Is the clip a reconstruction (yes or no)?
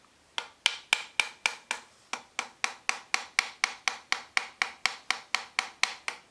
no